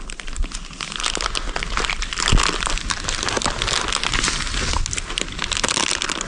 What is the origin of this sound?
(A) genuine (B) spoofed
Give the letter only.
A